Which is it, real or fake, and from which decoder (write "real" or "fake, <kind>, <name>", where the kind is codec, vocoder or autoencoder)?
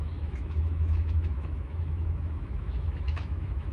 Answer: fake, autoencoder, DAC-VAE